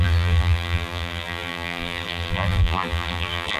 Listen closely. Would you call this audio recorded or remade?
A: remade